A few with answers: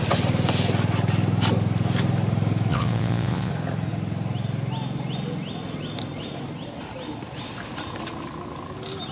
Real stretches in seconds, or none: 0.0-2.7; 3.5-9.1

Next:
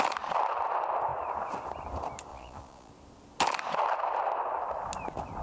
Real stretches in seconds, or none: 0.0-2.3; 2.9-5.4

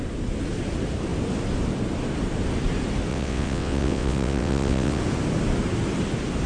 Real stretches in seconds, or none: 0.0-3.1; 5.0-6.5

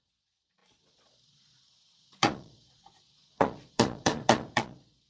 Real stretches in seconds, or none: none